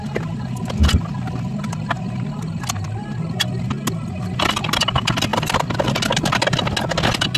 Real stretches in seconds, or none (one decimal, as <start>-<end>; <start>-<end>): 0.0-7.4